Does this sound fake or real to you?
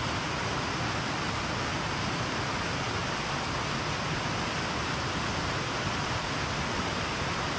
real